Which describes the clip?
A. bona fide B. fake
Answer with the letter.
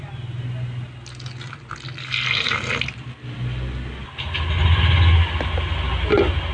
A